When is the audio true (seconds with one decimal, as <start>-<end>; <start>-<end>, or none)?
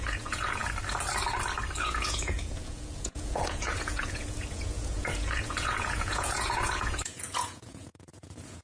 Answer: 0.6-1.8